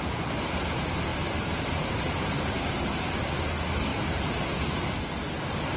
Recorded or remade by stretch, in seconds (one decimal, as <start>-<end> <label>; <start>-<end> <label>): 0.0-5.8 recorded